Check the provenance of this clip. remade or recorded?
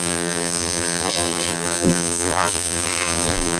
remade